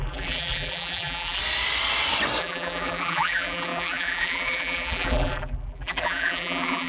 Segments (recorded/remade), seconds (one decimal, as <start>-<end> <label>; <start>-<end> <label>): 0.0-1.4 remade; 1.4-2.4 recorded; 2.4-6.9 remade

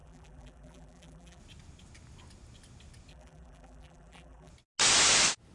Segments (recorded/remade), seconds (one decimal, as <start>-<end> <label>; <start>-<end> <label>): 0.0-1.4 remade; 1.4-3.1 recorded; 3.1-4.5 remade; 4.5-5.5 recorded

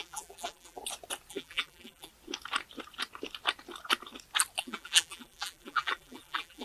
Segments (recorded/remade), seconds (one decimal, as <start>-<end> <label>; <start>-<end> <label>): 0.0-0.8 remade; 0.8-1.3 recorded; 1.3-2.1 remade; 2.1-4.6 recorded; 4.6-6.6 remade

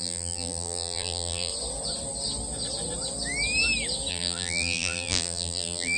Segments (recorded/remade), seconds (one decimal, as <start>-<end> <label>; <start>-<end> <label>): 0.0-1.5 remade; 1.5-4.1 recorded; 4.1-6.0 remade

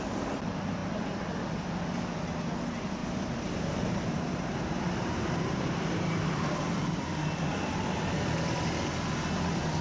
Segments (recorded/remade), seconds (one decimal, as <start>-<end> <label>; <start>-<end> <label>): 0.0-3.0 recorded; 3.0-6.3 remade; 6.3-9.8 recorded

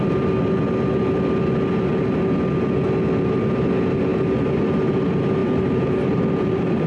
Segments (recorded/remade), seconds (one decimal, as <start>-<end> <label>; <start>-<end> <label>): 0.0-5.4 recorded; 5.4-6.9 remade